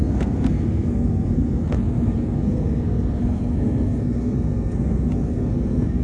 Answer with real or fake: fake